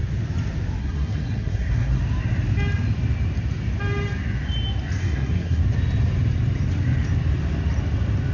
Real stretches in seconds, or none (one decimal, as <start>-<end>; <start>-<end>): 0.0-0.8; 2.0-5.0; 5.6-8.3